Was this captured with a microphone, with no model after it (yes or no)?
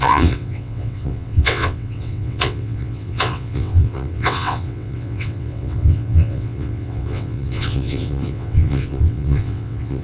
no